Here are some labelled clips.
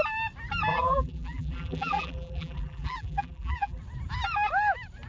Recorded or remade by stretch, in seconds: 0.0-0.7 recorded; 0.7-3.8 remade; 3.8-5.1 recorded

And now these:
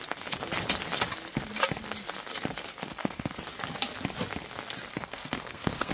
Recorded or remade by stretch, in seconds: 0.0-2.7 recorded; 2.7-3.4 remade; 3.4-4.9 recorded; 4.9-5.9 remade

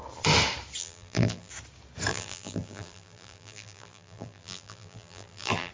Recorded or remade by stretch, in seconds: 0.0-0.8 recorded; 0.8-1.5 remade; 1.5-2.1 recorded; 2.1-5.7 remade

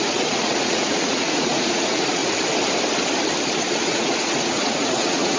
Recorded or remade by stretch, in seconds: 0.0-2.2 remade; 2.2-3.6 recorded; 3.6-5.4 remade

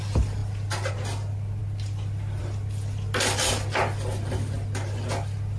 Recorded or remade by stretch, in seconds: 0.0-5.6 recorded